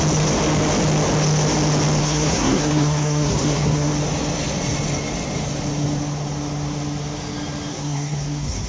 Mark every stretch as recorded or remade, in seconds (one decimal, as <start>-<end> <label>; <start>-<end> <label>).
0.0-2.0 recorded; 2.0-3.9 remade; 3.9-7.7 recorded; 7.7-8.7 remade